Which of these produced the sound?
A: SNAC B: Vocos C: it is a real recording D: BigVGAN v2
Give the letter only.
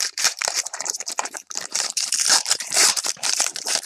D